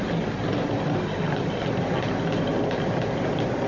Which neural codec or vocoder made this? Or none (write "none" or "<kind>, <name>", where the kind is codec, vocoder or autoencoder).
none